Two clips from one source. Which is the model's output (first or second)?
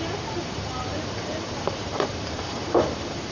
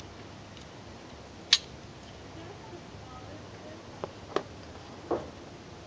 first